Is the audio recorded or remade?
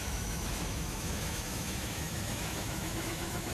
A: remade